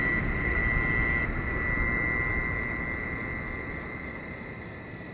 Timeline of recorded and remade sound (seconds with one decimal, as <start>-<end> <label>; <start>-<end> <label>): 0.0-0.6 remade; 0.6-3.7 recorded; 3.7-5.1 remade